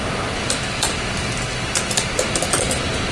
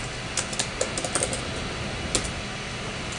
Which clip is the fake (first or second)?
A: first